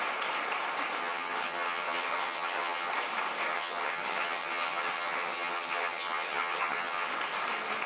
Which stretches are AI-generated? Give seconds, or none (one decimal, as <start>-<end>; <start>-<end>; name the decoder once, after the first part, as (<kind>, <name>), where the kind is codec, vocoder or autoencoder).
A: 1.0-2.9 (vocoder, HiFi-GAN); 3.5-7.1